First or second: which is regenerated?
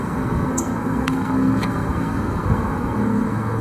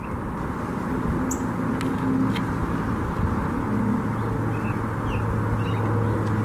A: first